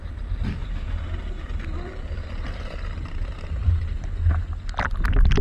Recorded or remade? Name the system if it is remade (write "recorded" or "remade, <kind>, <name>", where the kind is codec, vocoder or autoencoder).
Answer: recorded